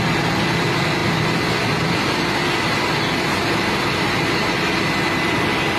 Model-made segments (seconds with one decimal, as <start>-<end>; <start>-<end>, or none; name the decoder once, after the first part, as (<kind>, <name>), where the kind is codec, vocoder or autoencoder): none